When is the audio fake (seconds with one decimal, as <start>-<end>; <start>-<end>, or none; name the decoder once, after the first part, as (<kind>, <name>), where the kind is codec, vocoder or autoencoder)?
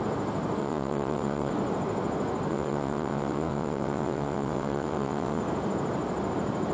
0.6-1.5 (vocoder, WaveNeXt); 2.5-5.4